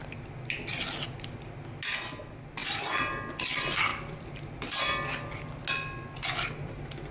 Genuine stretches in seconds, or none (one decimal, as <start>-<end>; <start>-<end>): 0.0-2.6; 3.4-3.9; 5.6-7.1